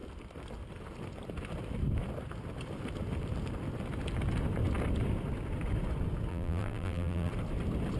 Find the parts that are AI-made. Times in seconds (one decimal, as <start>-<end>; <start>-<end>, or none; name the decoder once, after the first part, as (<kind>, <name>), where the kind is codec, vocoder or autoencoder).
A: 6.3-7.3 (vocoder, BigVGAN v2)